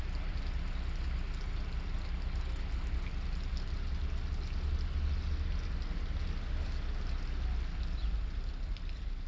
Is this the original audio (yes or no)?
yes